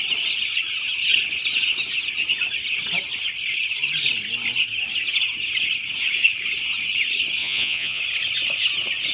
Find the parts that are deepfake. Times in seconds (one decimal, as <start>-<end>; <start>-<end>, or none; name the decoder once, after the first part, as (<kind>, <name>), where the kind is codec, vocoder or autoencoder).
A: 7.4-8.0 (vocoder, Vocos)